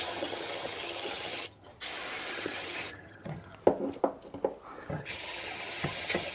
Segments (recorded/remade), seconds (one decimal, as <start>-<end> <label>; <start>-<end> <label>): 0.0-1.7 remade; 1.7-2.3 recorded; 2.3-3.5 remade; 3.5-4.9 recorded; 4.9-6.3 remade